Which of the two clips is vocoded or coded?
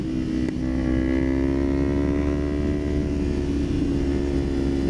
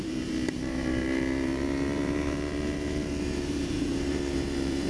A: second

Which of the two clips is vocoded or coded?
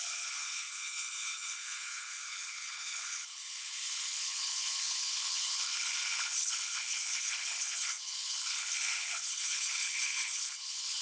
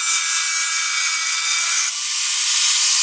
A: first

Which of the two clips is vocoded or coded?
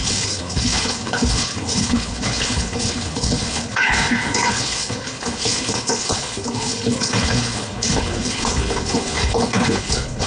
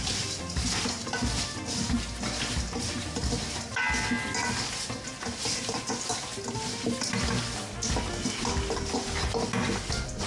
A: first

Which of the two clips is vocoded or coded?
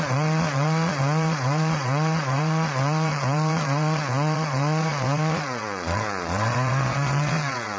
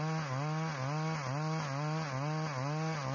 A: first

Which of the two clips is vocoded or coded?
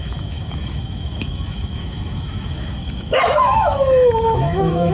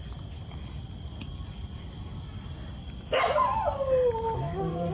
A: first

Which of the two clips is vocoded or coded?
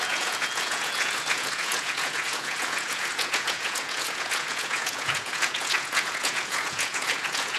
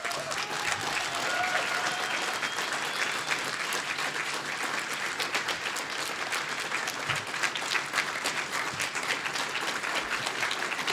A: first